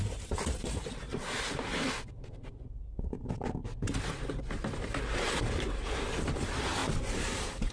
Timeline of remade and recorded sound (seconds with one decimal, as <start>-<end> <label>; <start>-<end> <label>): 0.0-1.7 remade; 1.7-4.3 recorded; 4.3-7.7 remade